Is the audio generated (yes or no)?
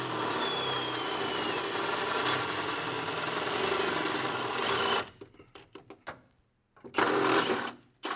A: no